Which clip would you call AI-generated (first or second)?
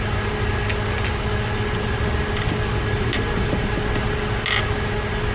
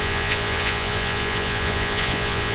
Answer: second